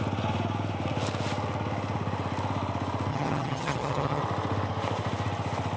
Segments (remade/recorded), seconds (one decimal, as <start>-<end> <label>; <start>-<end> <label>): 0.0-3.1 recorded; 3.1-4.2 remade; 4.2-5.8 recorded